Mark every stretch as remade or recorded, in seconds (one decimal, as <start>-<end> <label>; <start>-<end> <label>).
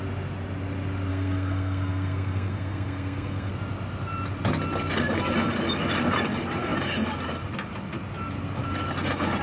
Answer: 0.0-1.1 recorded; 1.1-3.5 remade; 3.5-9.4 recorded